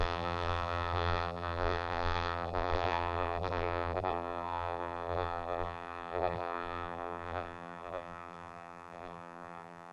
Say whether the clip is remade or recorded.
remade